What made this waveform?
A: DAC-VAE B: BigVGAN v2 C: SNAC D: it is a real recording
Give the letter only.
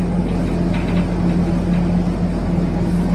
D